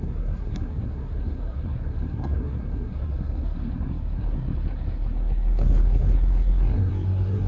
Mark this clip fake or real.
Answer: fake